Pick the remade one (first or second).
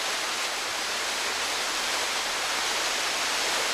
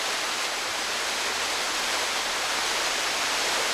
second